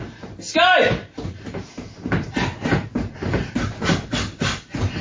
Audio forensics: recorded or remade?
recorded